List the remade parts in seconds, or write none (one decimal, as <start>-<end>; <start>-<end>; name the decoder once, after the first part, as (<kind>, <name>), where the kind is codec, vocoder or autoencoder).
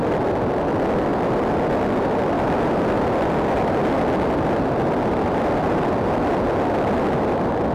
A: 1.1-5.7 (vocoder, BigVGAN v2)